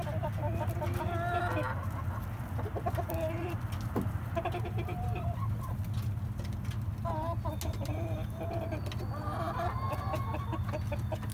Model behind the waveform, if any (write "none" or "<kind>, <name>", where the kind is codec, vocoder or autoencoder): none